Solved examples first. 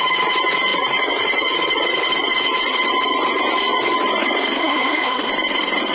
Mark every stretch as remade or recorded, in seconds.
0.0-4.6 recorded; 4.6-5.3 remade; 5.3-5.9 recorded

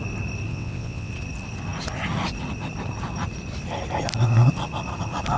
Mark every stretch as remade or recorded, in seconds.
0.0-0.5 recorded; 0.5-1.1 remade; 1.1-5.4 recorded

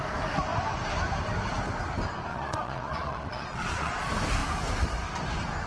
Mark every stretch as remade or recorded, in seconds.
0.0-2.3 recorded; 2.3-4.0 remade; 4.0-5.7 recorded

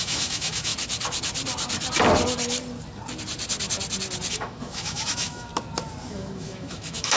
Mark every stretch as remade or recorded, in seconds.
0.0-0.7 remade; 0.7-4.3 recorded; 4.3-5.5 remade; 5.5-6.1 recorded; 6.1-7.2 remade